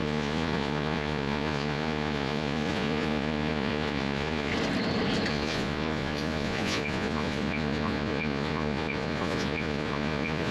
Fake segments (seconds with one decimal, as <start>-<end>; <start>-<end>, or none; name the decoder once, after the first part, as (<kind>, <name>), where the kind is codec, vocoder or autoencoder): 0.0-4.5 (vocoder, Vocos); 5.3-10.5